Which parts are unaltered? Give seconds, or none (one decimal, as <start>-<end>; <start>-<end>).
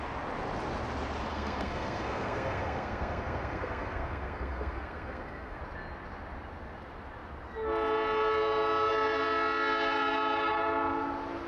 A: 0.0-1.3; 5.6-11.5